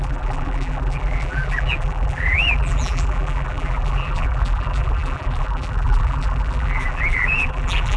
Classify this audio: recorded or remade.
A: remade